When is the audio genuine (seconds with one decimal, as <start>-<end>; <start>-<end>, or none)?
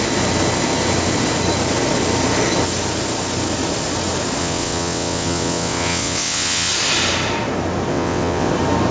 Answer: 0.0-4.4; 6.7-7.9; 8.5-8.9